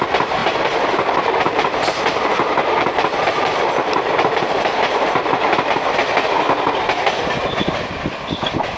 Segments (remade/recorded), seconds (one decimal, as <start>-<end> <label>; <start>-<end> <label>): 0.0-0.4 recorded; 0.4-5.4 remade; 5.4-8.8 recorded